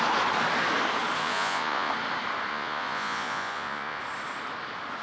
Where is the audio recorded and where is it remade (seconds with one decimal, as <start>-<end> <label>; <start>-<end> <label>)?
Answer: 0.0-1.2 recorded; 1.2-1.9 remade; 1.9-2.5 recorded; 2.5-4.0 remade; 4.0-5.0 recorded